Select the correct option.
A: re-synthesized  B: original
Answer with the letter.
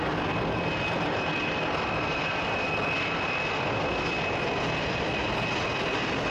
B